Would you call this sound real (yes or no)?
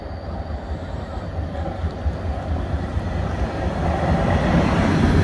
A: yes